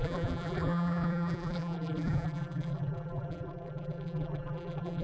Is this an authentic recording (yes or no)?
no